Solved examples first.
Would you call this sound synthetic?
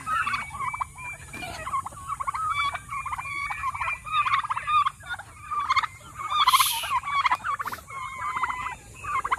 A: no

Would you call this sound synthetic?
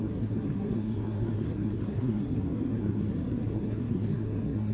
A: yes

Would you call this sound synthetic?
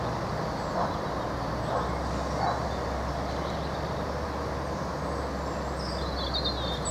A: no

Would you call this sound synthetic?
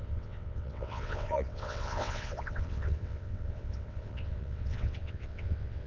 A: yes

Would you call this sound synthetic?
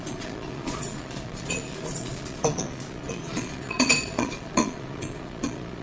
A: yes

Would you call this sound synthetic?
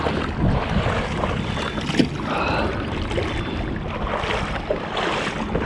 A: no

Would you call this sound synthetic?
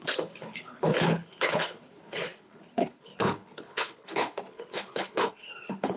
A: yes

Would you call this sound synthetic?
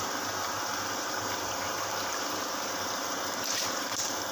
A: yes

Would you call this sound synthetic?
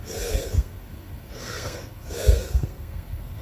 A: yes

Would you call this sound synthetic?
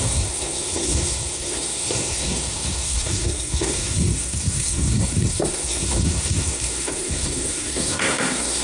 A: yes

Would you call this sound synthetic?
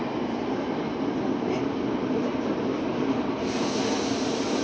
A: no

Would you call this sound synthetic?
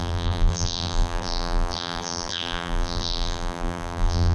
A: yes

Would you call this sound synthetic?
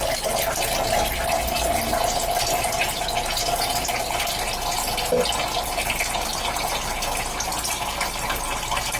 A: no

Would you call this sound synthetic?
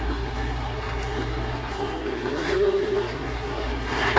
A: yes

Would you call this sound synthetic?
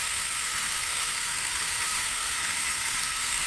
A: yes